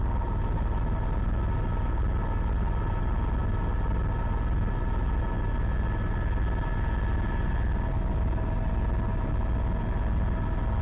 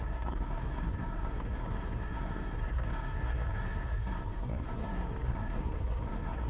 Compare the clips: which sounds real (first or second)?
first